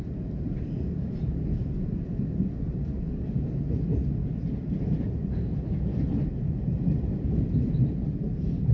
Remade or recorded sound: recorded